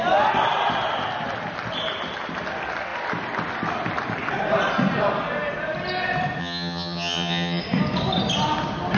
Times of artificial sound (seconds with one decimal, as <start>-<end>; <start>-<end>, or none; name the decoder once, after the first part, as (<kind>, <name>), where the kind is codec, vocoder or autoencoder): 6.4-7.6 (vocoder, HiFi-GAN)